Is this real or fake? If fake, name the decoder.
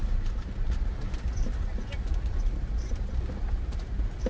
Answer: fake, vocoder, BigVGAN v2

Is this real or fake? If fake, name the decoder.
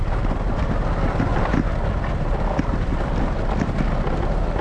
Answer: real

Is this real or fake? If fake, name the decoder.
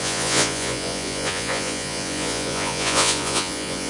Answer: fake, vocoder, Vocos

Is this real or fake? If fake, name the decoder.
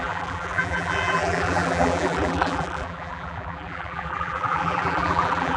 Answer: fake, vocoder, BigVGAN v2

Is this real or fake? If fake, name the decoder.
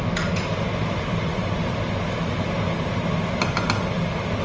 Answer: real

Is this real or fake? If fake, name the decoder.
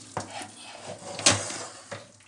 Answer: real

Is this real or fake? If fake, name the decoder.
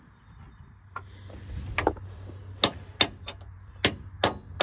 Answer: real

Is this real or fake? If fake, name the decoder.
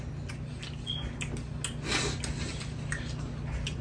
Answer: real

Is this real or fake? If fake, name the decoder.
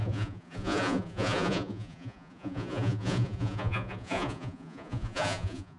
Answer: fake, vocoder, Vocos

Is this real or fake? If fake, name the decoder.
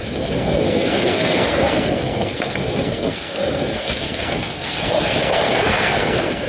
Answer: fake, codec, SNAC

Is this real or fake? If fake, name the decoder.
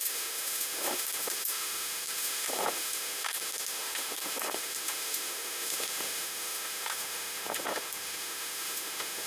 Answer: fake, autoencoder, DAC-VAE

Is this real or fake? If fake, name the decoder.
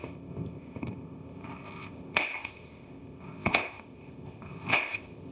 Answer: fake, codec, ZipCodec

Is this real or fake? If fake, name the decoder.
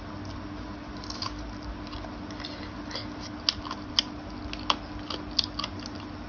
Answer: real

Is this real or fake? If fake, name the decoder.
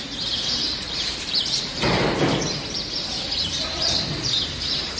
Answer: fake, vocoder, BigVGAN v2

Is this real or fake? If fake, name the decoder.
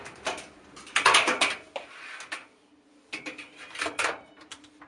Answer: real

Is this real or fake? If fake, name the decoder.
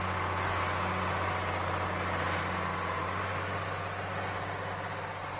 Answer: real